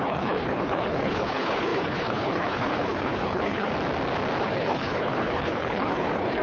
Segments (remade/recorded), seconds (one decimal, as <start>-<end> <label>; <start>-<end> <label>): 0.0-3.7 remade; 3.7-4.4 recorded; 4.4-6.4 remade